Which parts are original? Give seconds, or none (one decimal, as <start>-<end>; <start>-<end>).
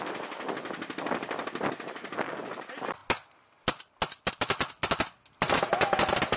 0.0-6.4